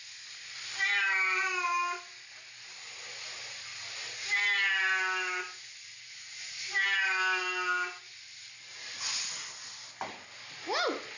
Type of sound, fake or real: real